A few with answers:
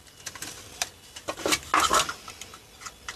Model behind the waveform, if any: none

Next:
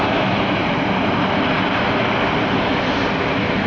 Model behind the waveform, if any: none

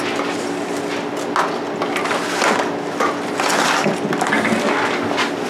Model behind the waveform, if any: none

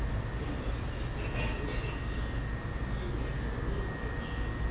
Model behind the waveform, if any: none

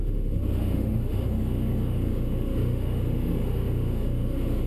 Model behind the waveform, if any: autoencoder, DAC-VAE